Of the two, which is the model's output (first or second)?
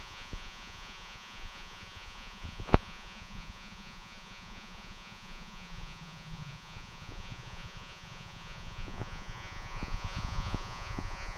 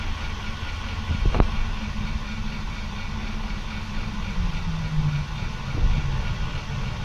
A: first